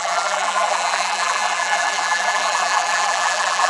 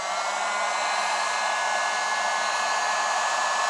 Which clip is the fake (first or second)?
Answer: first